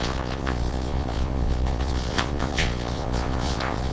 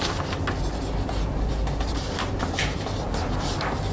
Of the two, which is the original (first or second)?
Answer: second